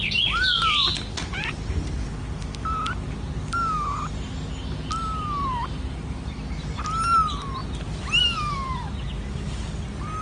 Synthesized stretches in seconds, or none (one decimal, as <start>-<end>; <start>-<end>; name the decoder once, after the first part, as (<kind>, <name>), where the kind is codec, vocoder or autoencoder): none